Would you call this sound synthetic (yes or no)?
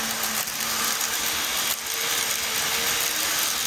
no